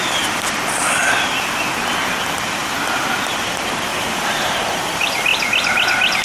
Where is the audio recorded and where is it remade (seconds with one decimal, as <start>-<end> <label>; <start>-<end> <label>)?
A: 0.0-3.9 recorded; 3.9-4.7 remade; 4.7-6.2 recorded